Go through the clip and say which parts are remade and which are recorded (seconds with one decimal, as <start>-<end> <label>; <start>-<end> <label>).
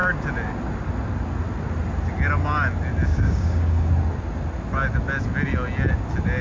0.0-3.1 recorded; 3.1-3.9 remade; 3.9-6.4 recorded